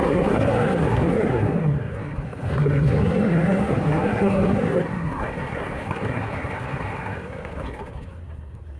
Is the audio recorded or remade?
remade